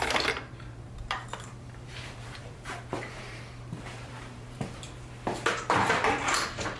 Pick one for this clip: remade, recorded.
remade